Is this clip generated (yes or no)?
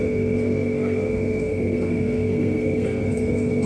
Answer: yes